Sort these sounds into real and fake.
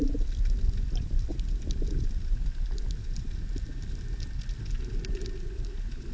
real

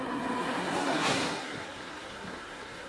fake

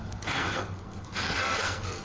fake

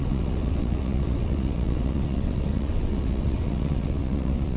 fake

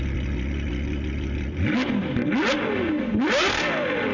real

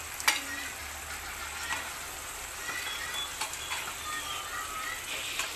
real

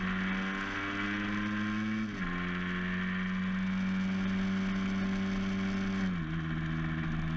real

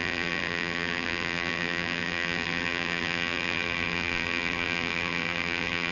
fake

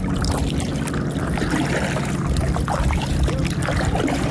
real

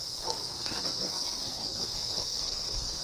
fake